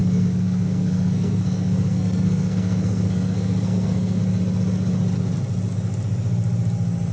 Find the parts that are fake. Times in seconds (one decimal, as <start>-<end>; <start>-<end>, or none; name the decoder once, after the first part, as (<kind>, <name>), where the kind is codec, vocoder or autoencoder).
0.0-4.2 (codec, SNAC)